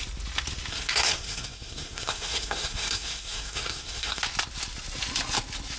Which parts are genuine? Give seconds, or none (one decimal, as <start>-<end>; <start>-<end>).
0.0-0.7; 4.2-5.8